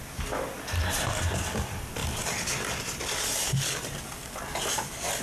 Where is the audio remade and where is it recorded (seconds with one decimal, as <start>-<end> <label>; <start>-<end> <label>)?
0.0-5.2 recorded